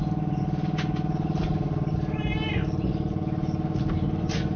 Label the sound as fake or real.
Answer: real